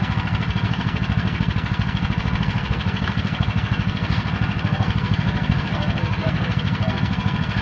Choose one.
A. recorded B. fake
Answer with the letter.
B